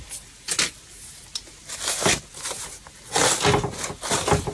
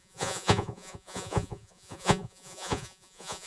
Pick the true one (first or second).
first